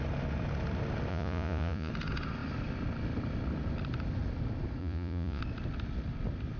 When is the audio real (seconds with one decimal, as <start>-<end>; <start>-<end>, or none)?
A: 0.0-1.1; 1.9-4.8; 5.4-6.6